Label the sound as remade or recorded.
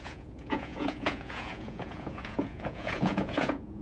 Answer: remade